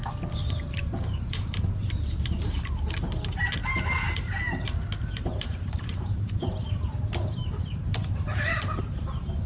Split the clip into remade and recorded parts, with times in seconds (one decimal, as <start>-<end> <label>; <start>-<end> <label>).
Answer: 0.0-0.4 recorded; 0.4-1.7 remade; 1.7-4.6 recorded; 4.6-8.6 remade; 8.6-9.5 recorded